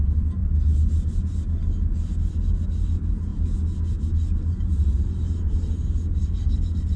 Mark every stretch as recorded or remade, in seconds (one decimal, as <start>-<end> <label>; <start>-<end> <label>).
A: 0.0-7.0 recorded